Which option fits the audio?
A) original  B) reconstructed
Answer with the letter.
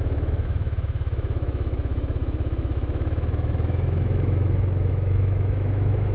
B